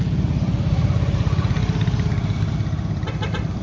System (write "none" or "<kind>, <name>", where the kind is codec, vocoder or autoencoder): none